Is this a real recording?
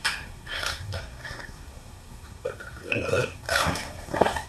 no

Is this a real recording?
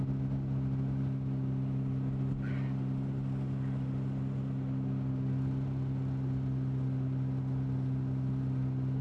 yes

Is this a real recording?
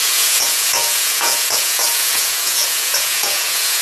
no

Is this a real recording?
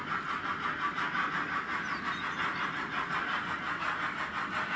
yes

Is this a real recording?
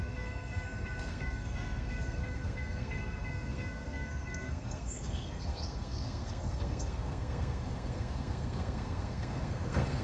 no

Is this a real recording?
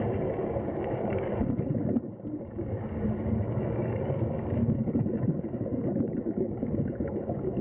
no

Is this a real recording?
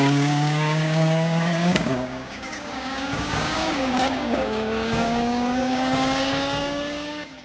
no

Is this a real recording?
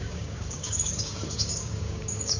no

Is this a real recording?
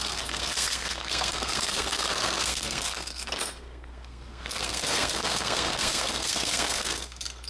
no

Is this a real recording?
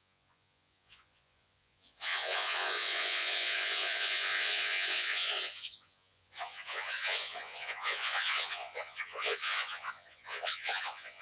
no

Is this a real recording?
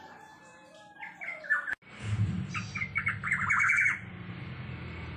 yes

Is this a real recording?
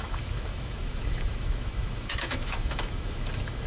no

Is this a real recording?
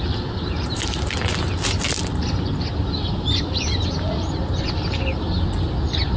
yes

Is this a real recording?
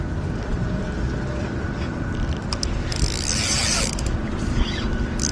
no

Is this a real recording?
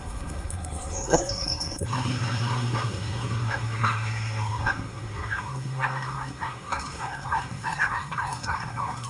no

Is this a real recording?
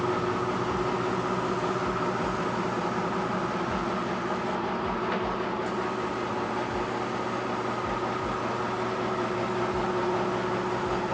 yes